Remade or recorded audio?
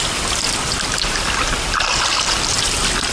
recorded